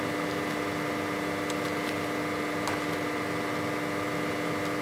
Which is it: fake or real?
real